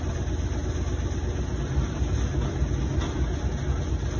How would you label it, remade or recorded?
recorded